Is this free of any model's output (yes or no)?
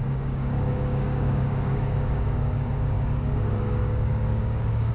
no